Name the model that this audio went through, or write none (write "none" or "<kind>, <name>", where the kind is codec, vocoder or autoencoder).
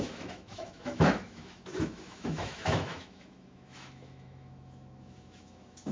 autoencoder, DAC-VAE